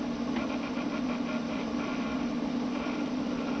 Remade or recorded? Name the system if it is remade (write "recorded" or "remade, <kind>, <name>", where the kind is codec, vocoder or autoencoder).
remade, vocoder, BigVGAN v2